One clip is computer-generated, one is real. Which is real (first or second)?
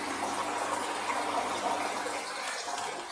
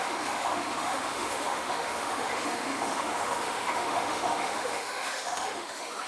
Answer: first